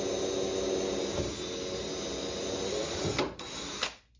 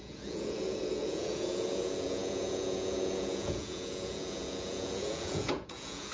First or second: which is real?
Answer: first